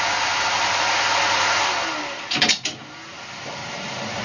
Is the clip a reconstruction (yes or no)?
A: no